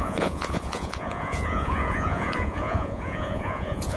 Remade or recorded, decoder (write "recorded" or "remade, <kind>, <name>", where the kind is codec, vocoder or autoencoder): remade, vocoder, Vocos